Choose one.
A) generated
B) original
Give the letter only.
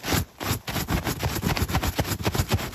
B